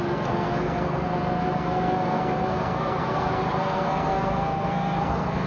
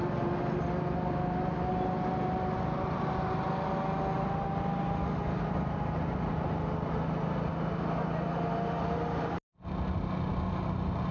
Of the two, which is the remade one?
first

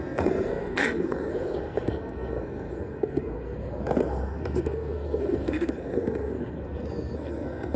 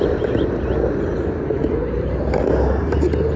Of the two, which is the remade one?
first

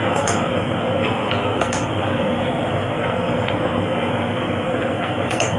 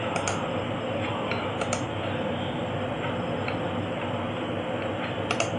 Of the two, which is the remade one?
first